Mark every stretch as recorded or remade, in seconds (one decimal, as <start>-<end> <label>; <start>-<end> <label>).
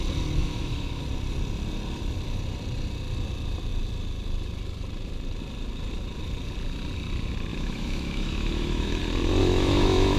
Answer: 0.0-0.4 recorded; 0.4-1.0 remade; 1.0-7.5 recorded; 7.5-9.0 remade; 9.0-9.4 recorded; 9.4-10.2 remade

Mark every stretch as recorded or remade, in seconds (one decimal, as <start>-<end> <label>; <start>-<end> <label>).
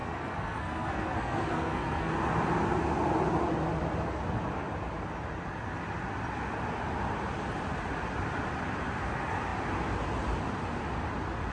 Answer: 0.0-2.1 remade; 2.1-11.5 recorded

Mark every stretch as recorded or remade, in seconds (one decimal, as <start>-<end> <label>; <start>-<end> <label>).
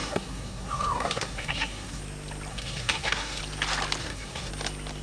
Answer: 0.0-2.0 remade; 2.0-2.5 recorded; 2.5-3.4 remade; 3.4-4.0 recorded; 4.0-4.5 remade; 4.5-5.0 recorded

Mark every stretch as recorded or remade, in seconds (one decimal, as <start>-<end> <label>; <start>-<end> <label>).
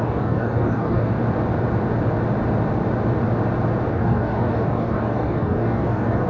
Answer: 0.0-1.2 remade; 1.2-3.9 recorded; 3.9-6.3 remade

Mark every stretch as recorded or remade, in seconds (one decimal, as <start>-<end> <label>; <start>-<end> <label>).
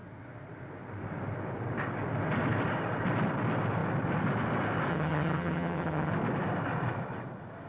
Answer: 0.0-4.9 recorded; 4.9-6.1 remade; 6.1-7.7 recorded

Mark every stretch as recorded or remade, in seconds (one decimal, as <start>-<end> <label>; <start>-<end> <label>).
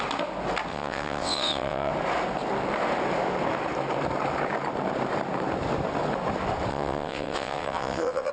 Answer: 0.0-0.7 recorded; 0.7-1.9 remade; 1.9-6.7 recorded; 6.7-8.3 remade